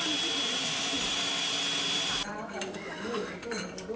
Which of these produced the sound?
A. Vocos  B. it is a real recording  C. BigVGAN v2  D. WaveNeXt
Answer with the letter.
C